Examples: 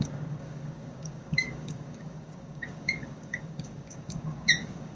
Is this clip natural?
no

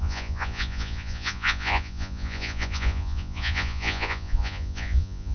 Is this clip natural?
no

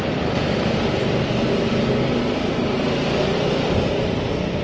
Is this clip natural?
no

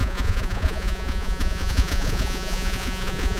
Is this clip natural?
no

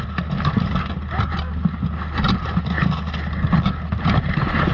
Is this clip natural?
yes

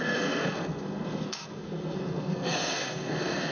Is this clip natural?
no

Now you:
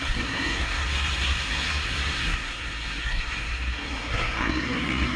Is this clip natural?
no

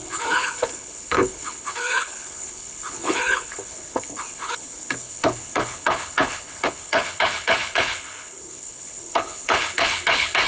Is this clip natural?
no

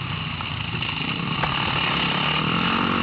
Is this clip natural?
yes